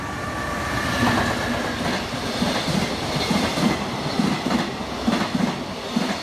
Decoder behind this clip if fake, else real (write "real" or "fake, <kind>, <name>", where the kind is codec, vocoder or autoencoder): real